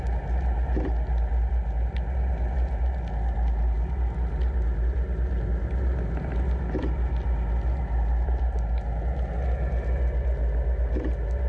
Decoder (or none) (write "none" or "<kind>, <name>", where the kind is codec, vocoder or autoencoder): none